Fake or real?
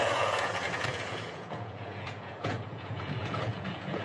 fake